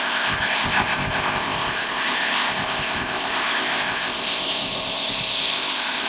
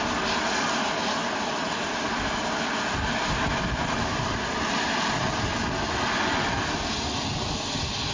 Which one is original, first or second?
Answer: second